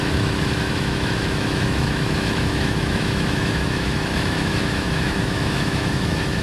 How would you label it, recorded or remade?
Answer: remade